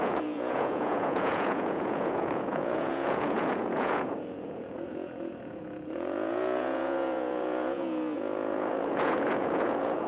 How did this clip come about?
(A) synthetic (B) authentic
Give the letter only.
A